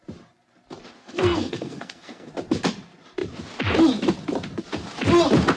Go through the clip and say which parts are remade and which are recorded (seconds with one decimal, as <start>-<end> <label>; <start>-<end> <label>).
0.0-1.0 recorded; 1.0-2.3 remade; 2.3-5.6 recorded